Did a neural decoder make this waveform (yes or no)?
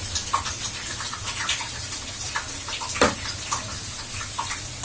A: no